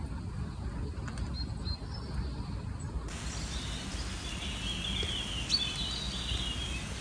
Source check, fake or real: real